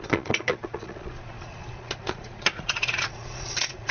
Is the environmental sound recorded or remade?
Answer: remade